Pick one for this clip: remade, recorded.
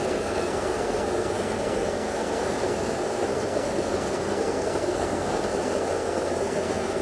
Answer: remade